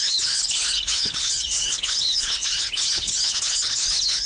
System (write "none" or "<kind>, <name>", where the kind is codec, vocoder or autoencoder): codec, HILCodec